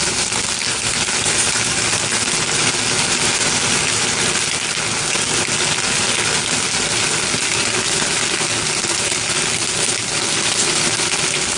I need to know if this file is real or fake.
real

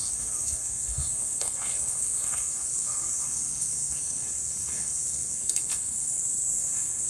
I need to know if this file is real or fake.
fake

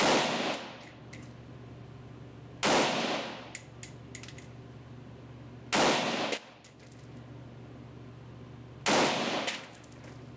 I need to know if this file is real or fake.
real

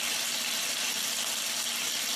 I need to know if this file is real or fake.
real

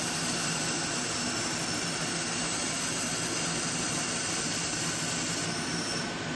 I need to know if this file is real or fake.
real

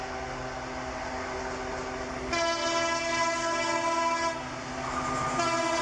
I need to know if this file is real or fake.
real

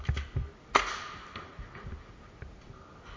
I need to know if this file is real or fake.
real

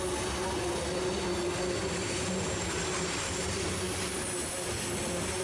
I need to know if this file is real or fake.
real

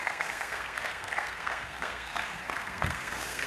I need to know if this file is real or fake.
fake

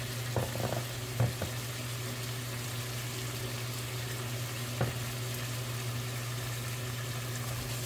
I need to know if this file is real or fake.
real